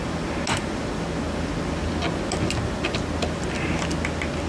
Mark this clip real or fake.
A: real